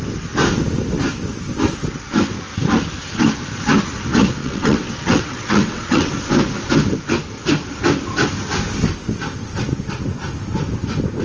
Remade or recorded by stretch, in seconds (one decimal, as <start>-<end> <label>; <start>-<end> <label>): 0.0-4.4 recorded; 4.4-6.1 remade; 6.1-11.2 recorded